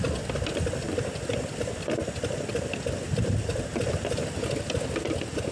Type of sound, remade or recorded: recorded